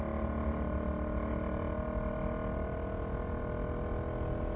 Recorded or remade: recorded